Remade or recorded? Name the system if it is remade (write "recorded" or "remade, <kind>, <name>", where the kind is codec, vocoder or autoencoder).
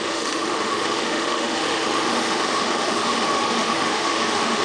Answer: remade, autoencoder, DAC-VAE